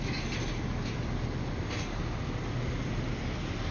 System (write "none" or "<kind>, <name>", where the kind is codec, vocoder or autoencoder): none